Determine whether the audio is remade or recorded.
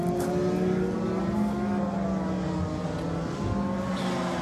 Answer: recorded